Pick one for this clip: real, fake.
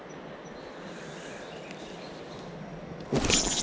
real